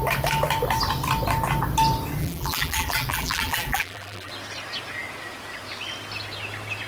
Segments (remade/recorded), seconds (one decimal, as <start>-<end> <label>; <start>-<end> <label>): 0.0-2.2 recorded; 2.2-4.3 remade; 4.3-6.9 recorded